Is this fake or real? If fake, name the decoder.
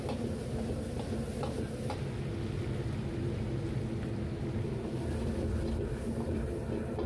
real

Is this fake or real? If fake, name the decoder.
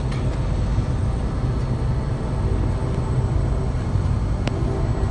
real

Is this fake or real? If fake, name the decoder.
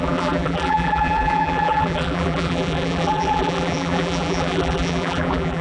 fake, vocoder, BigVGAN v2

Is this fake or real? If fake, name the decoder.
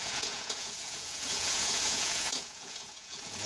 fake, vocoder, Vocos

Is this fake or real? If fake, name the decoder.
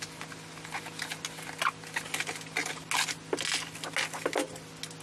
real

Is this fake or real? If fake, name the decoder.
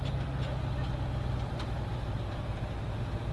real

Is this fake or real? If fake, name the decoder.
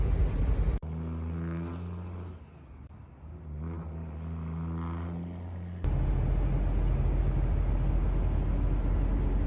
real